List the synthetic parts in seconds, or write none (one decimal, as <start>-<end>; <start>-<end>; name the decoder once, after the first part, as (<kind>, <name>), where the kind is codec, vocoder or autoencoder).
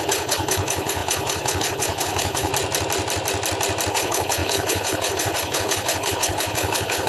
0.0-2.5 (codec, HILCodec); 3.9-7.1